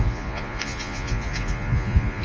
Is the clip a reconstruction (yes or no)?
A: yes